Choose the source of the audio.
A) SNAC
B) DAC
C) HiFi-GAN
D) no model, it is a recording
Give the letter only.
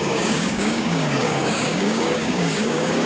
B